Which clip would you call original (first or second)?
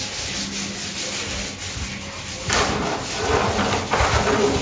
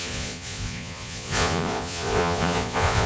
first